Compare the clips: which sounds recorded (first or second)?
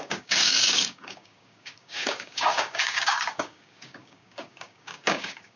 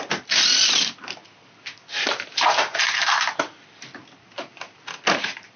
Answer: second